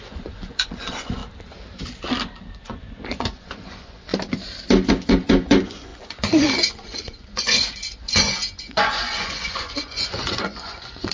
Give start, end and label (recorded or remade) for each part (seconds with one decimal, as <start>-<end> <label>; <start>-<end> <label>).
0.0-1.2 remade; 1.2-2.6 recorded; 2.6-4.1 remade; 4.1-4.9 recorded; 4.9-11.1 remade